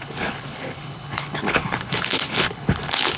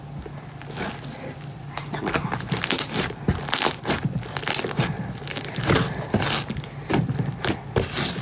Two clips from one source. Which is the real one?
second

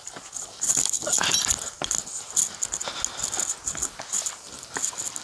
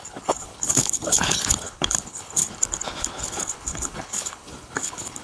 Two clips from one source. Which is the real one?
first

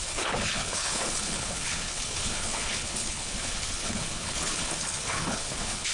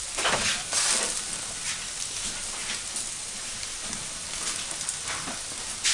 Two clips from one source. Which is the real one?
second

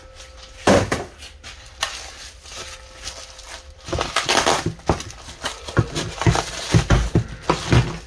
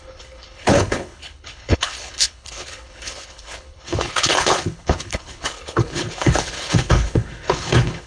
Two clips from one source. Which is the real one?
first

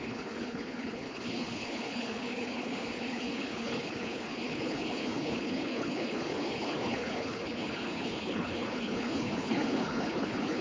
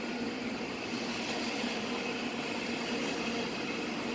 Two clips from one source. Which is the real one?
second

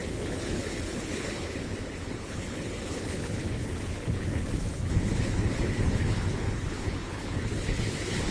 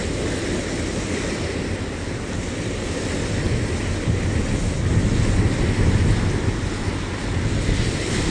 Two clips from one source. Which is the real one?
second